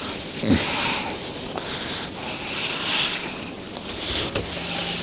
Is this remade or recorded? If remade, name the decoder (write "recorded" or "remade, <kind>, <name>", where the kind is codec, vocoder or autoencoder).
recorded